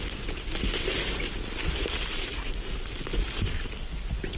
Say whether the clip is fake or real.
real